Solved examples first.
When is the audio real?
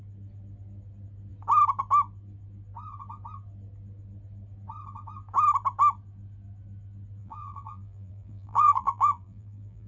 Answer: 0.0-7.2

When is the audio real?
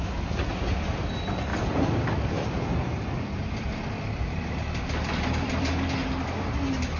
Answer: 0.0-1.5; 5.7-7.0